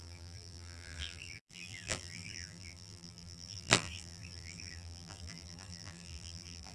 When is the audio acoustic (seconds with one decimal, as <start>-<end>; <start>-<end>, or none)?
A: none

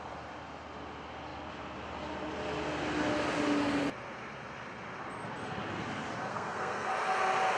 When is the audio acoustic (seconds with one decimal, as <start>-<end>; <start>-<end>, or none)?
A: 0.0-6.3; 6.9-7.6

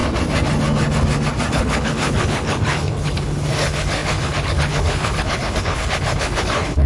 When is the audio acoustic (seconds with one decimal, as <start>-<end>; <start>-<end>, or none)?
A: 0.0-1.5

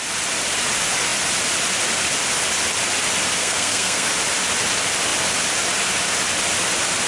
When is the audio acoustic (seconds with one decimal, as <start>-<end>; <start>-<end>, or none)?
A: 0.0-3.4; 4.1-7.1

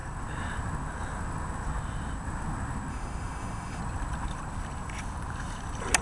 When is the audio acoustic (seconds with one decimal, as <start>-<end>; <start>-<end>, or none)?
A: 0.0-2.9; 3.8-6.0

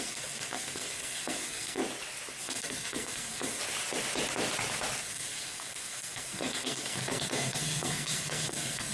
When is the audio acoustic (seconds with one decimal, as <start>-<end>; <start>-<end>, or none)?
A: 1.8-2.4; 3.6-5.0